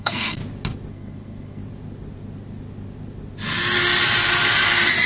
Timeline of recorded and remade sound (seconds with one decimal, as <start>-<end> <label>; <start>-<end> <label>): 0.0-0.4 remade; 0.4-0.9 recorded; 0.9-1.6 remade; 1.6-5.1 recorded